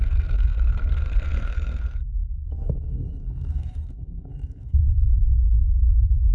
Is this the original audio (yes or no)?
no